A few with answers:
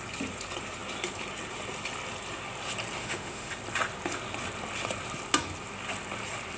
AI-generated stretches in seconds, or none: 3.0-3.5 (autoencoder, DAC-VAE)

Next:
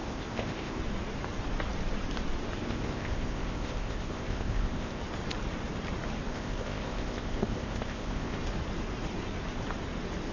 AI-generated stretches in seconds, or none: 0.0-0.8 (codec, ZipCodec); 2.6-5.0; 6.3-8.4

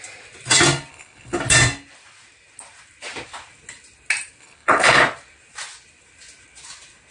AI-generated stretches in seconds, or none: 0.9-1.4 (codec, HILCodec); 4.4-5.0

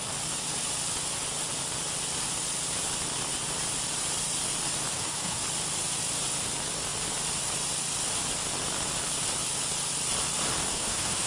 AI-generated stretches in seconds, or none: 4.9-5.4 (autoencoder, DAC-VAE); 10.7-11.3

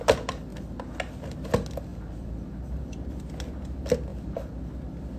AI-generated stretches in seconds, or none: 1.9-2.8 (vocoder, BigVGAN v2); 4.1-4.6

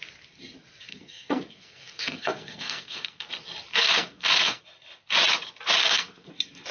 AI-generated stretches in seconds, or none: 0.9-3.3 (codec, SNAC); 3.7-4.6; 5.8-6.3

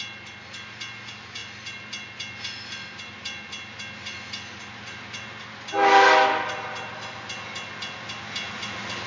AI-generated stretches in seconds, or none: none

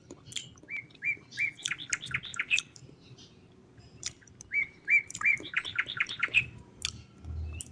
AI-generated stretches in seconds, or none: 2.3-6.8 (vocoder, BigVGAN v2)